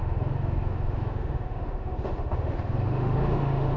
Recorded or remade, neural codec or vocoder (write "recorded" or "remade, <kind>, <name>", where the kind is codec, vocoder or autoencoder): remade, autoencoder, DAC-VAE